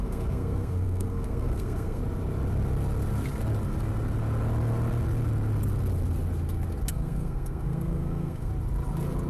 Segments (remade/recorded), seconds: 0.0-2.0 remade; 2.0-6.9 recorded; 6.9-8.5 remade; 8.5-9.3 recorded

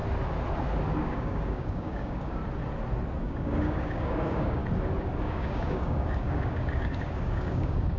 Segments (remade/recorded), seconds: 0.0-1.0 recorded; 1.0-2.4 remade; 2.4-3.2 recorded; 3.2-4.6 remade; 4.6-5.2 recorded; 5.2-8.0 remade

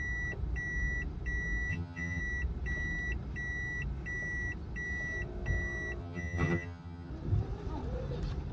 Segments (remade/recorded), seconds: 0.0-1.7 recorded; 1.7-2.2 remade; 2.2-6.0 recorded; 6.0-7.1 remade; 7.1-8.5 recorded

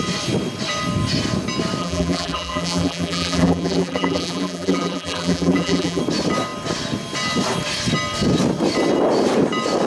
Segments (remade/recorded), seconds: 0.0-1.8 recorded; 1.8-6.0 remade; 6.0-9.9 recorded

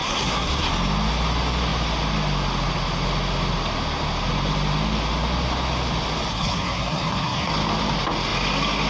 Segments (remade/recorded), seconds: 0.0-0.7 remade; 0.7-6.3 recorded; 6.3-7.5 remade; 7.5-8.9 recorded

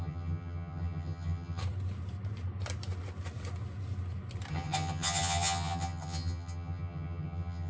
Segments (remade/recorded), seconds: 0.0-1.6 remade; 1.6-4.5 recorded; 4.5-7.7 remade

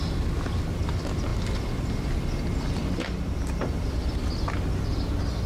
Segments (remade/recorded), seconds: 0.0-3.6 recorded; 3.6-4.2 remade; 4.2-5.5 recorded

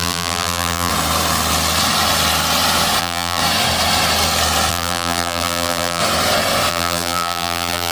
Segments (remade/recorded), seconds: 0.0-0.9 remade; 0.9-3.0 recorded; 3.0-3.4 remade; 3.4-4.7 recorded; 4.7-6.0 remade; 6.0-6.7 recorded; 6.7-7.9 remade